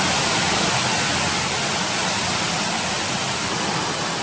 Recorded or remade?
recorded